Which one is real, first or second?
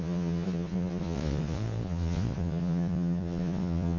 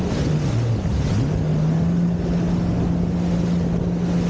second